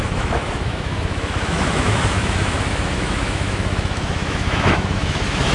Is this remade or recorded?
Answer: remade